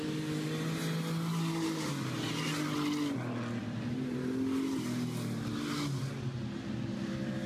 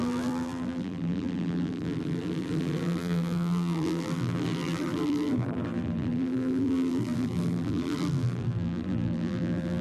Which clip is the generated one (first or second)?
second